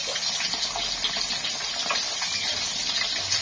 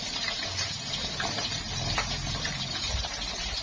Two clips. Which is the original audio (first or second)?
first